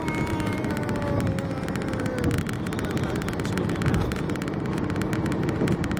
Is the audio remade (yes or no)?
no